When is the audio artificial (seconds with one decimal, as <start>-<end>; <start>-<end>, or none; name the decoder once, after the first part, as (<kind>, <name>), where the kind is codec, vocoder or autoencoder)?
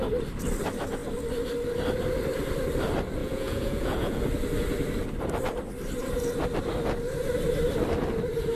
3.2-4.2 (vocoder, Vocos)